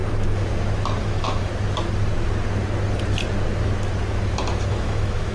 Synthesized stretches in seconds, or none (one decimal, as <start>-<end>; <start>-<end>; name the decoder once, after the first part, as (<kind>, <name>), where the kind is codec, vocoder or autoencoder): 1.0-1.5 (autoencoder, DAC-VAE); 4.7-5.3